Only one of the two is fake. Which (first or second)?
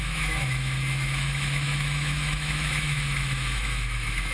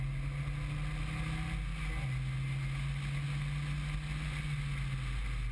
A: first